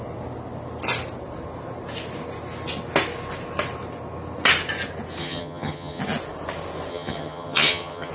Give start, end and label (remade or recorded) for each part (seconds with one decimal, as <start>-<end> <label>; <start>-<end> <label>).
0.0-5.2 recorded; 5.2-6.0 remade; 6.0-6.9 recorded; 6.9-8.1 remade